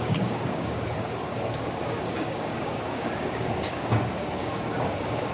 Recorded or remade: remade